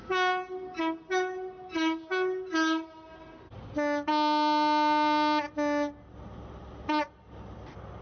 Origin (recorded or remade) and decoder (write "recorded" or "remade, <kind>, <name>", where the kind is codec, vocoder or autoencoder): recorded